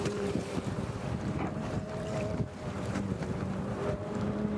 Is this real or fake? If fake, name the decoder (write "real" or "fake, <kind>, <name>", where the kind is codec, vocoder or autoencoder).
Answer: fake, vocoder, BigVGAN v2